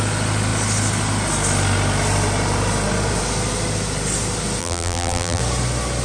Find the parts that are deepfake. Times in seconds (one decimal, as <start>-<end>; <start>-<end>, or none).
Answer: 4.6-5.4